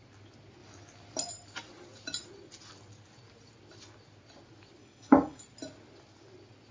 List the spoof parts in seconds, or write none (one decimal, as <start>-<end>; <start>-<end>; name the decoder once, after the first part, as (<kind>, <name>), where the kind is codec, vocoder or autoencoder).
4.8-5.4 (codec, DAC)